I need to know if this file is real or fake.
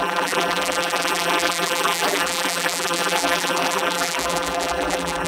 fake